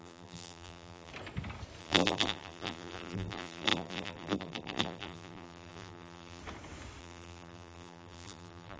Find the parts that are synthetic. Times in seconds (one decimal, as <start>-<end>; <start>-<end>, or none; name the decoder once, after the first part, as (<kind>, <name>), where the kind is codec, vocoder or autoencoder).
0.0-1.1 (vocoder, BigVGAN v2); 1.8-6.4; 7.0-8.8